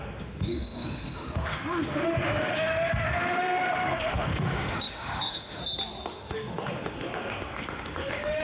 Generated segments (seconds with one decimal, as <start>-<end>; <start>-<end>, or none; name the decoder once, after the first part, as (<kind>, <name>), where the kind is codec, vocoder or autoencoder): 0.0-5.6 (autoencoder, DAC-VAE); 6.1-8.4